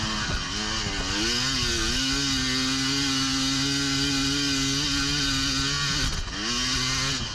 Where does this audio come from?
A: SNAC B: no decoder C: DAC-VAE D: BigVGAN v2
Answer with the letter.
B